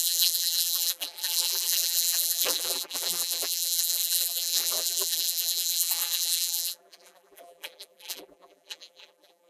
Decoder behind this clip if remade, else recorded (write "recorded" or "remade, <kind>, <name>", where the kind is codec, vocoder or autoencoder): remade, vocoder, BigVGAN v2